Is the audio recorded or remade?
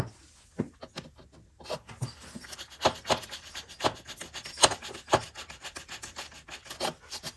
recorded